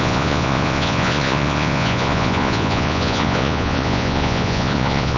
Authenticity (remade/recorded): remade